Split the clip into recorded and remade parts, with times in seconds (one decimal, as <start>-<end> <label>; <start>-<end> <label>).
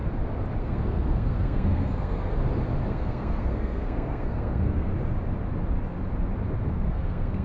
0.0-0.6 recorded; 0.6-2.3 remade; 2.3-2.9 recorded; 2.9-4.9 remade; 4.9-6.7 recorded; 6.7-7.4 remade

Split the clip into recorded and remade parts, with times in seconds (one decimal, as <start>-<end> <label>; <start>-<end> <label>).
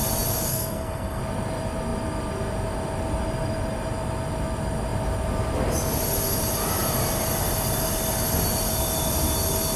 0.0-0.5 recorded; 0.5-1.2 remade; 1.2-9.8 recorded